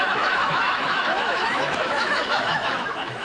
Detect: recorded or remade remade